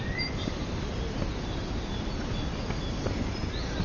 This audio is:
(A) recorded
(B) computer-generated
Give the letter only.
A